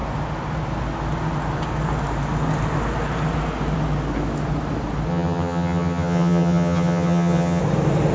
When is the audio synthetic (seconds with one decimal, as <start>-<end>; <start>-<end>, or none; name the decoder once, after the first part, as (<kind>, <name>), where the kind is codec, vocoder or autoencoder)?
5.1-7.6 (vocoder, HiFi-GAN)